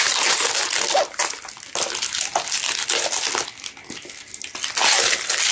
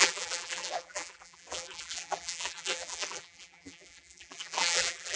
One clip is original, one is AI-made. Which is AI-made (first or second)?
second